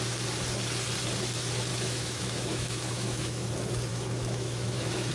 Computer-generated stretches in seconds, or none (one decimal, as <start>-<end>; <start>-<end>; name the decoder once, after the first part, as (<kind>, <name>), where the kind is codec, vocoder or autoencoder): 1.7-3.5 (autoencoder, DAC-VAE); 3.9-5.1